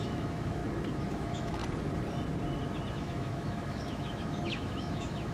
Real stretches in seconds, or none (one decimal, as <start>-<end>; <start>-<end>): 0.6-1.1; 1.6-2.9

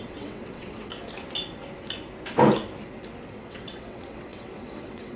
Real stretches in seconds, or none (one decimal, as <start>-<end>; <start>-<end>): 0.9-3.3

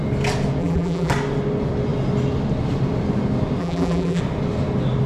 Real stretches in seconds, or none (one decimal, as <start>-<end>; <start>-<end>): 0.0-0.6; 1.1-3.6; 4.2-5.1

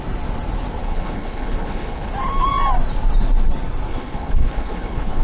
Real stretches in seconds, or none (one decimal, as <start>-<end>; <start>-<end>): 0.0-0.8; 2.1-3.9

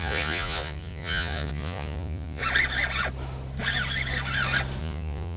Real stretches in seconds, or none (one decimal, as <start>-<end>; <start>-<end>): 2.4-4.8

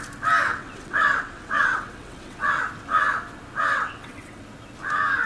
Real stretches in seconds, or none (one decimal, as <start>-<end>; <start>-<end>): 0.0-0.5; 2.6-3.7; 4.4-5.3

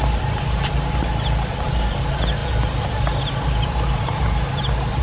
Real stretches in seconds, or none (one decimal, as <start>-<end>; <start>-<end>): 0.0-5.0